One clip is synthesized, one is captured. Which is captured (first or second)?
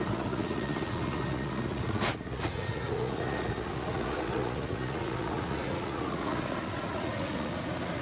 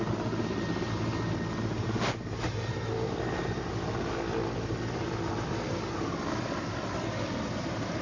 second